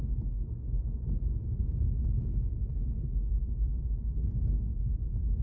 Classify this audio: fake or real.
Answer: fake